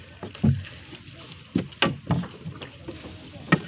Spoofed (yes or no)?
no